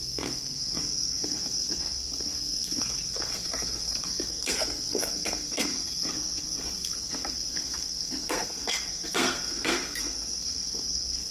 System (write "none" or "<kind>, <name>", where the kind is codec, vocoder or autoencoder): codec, SNAC